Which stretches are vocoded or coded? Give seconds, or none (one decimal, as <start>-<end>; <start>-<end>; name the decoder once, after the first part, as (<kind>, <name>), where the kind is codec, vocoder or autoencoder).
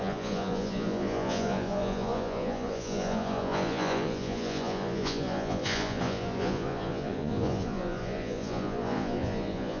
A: 0.0-9.8 (vocoder, Vocos)